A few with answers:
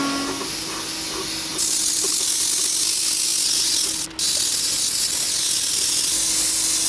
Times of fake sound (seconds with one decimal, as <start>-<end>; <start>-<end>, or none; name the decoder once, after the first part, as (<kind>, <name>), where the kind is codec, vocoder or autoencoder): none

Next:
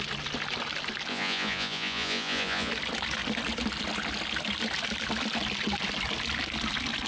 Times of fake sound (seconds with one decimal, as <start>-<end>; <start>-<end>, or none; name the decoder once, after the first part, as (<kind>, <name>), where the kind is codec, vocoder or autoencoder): 1.1-2.7 (vocoder, Vocos)

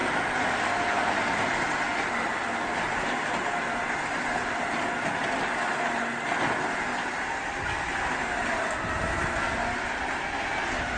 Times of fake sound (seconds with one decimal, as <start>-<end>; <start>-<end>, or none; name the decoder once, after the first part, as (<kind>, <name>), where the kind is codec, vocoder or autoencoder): none